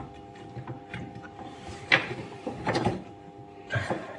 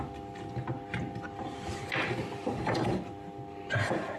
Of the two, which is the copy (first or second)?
first